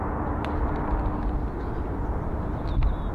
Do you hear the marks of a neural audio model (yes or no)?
no